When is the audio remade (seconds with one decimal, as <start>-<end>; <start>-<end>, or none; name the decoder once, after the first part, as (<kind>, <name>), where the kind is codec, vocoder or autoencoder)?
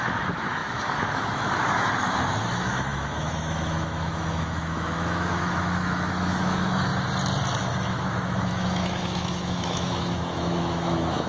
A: 0.0-6.9 (autoencoder, DAC-VAE); 7.6-11.3